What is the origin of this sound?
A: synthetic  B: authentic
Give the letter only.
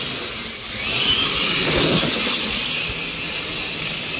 B